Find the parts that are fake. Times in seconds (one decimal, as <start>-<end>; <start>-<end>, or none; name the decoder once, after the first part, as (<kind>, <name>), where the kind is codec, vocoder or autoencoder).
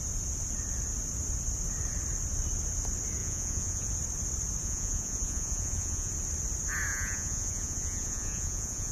3.2-3.9 (vocoder, Vocos); 4.6-6.1; 6.9-8.9